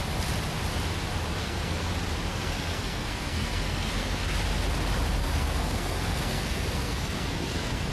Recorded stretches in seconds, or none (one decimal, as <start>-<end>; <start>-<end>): 0.0-1.4; 1.9-2.3; 4.2-5.2